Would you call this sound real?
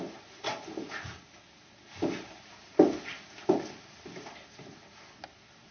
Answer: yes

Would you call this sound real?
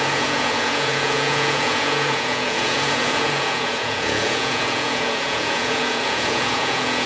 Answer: no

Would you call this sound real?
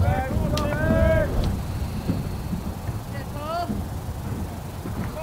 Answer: yes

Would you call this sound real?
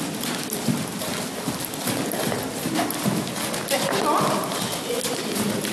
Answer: yes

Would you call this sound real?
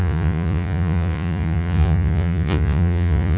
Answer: no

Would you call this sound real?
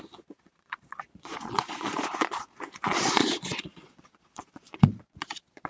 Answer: no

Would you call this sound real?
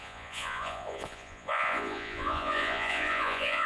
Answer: no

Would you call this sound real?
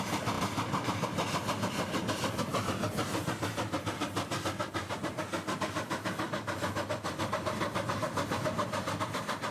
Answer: yes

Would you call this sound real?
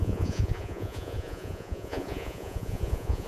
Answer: no